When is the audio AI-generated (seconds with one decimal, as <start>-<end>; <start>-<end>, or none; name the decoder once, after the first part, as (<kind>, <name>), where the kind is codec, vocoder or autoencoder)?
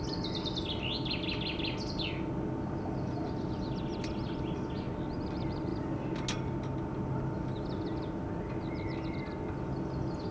none